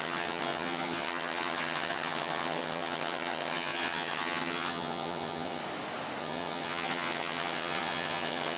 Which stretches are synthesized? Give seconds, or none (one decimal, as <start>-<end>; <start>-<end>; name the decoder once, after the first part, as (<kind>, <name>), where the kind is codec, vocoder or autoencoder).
0.0-5.6 (vocoder, HiFi-GAN); 6.2-8.6